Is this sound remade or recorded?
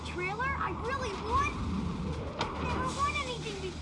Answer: recorded